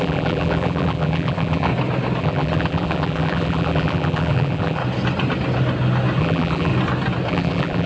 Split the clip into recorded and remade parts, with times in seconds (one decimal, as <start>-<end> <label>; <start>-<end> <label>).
0.0-1.7 remade; 1.7-2.2 recorded; 2.2-4.8 remade; 4.8-6.2 recorded; 6.2-6.7 remade; 6.7-7.3 recorded; 7.3-7.9 remade